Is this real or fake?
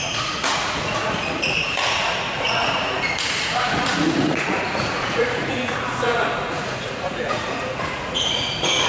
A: fake